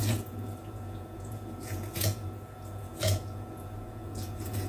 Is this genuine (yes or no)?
no